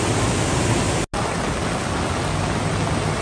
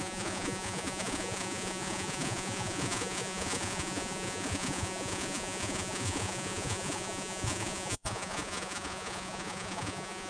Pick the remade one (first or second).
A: second